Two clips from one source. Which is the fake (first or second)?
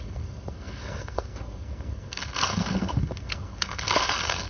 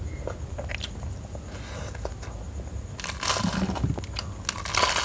first